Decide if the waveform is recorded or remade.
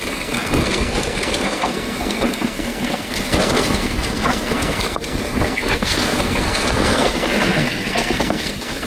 remade